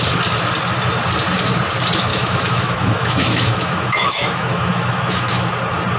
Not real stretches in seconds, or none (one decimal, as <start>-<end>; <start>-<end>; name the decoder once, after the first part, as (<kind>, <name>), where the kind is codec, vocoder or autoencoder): 2.1-5.5 (autoencoder, DAC-VAE)